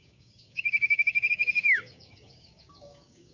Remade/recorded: remade